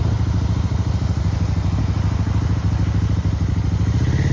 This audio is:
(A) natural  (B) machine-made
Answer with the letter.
A